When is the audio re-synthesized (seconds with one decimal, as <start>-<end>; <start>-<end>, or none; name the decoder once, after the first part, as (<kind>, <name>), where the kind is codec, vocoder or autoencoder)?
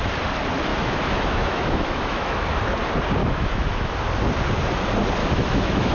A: 0.7-2.6 (autoencoder, DAC-VAE); 3.2-3.9; 5.2-5.9